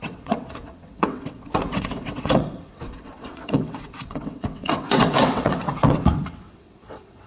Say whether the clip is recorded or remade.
remade